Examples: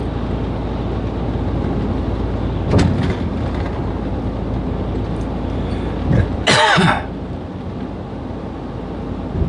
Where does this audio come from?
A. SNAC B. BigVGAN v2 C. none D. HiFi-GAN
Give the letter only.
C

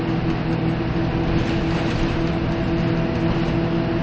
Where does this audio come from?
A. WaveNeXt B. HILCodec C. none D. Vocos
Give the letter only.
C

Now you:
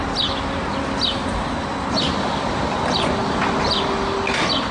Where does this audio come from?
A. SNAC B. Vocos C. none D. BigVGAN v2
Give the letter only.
C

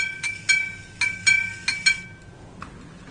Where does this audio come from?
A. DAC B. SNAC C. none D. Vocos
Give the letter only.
C